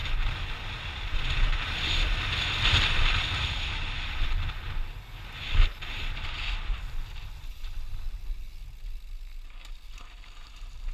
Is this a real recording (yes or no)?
yes